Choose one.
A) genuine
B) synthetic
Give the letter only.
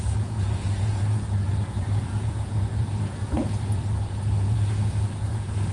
B